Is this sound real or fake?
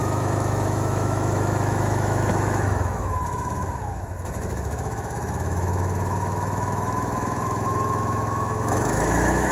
fake